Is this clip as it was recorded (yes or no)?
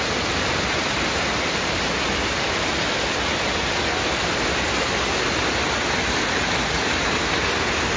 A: yes